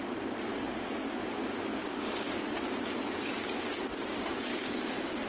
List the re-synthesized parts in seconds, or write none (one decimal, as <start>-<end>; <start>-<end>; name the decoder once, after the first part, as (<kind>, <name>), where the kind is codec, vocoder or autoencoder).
0.5-1.2 (codec, DAC); 1.7-2.3; 4.5-5.3